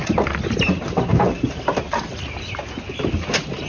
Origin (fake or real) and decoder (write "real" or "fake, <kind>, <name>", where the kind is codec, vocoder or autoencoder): real